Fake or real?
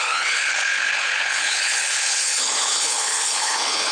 fake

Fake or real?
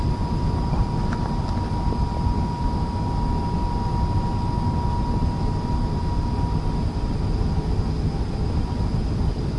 real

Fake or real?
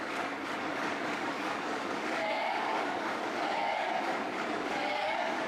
fake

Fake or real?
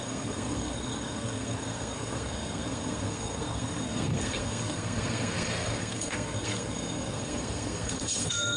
fake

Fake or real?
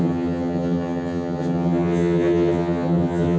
fake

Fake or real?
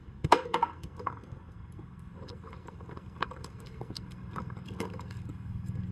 fake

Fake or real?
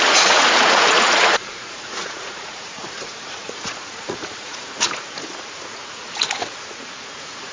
fake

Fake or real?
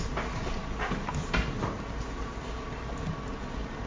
real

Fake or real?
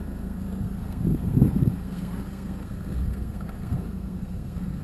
fake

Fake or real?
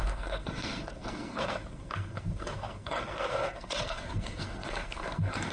fake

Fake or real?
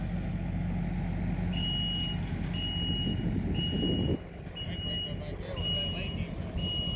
real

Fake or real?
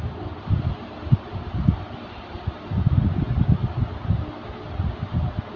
real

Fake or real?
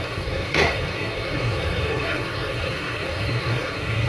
fake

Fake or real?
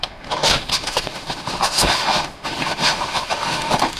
fake